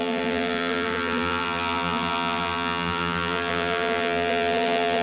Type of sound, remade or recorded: remade